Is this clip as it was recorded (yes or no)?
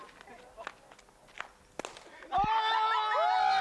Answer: yes